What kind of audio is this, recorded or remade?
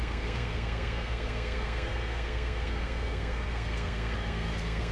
remade